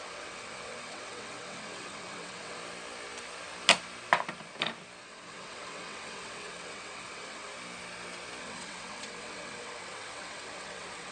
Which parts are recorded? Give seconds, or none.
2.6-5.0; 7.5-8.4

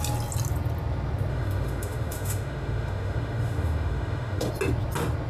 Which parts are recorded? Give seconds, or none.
0.0-1.3; 4.5-5.3